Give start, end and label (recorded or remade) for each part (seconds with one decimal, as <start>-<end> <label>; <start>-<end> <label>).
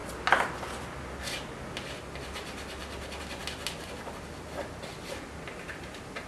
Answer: 0.0-6.3 recorded